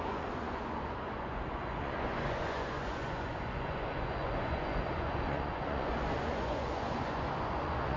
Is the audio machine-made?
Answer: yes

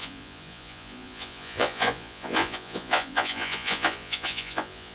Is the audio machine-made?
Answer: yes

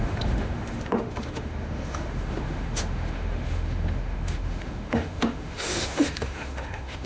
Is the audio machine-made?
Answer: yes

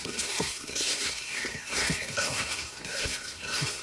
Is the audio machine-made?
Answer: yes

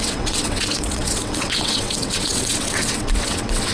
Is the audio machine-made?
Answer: yes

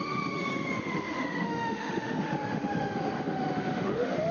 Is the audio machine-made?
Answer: yes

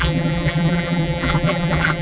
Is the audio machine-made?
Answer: yes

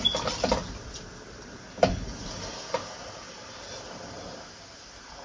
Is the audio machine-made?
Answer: no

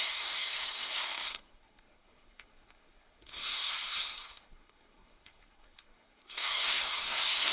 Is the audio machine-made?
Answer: yes